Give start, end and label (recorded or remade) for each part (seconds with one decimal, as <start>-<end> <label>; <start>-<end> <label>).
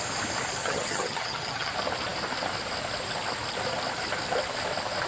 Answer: 0.0-0.6 recorded; 0.6-1.7 remade; 1.7-5.1 recorded